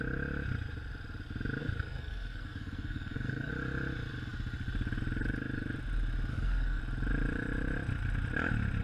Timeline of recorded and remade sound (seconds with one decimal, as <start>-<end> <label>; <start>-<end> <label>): 0.0-1.6 recorded; 1.6-3.5 remade; 3.5-6.3 recorded; 6.3-6.8 remade; 6.8-8.8 recorded